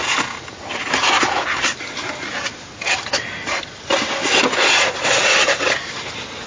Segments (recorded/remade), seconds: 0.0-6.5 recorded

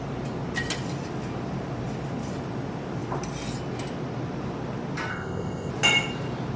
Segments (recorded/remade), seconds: 0.0-5.1 recorded; 5.1-5.7 remade; 5.7-6.6 recorded

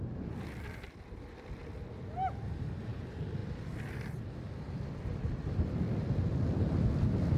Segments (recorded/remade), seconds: 0.0-7.4 recorded